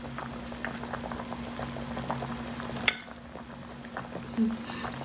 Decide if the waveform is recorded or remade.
recorded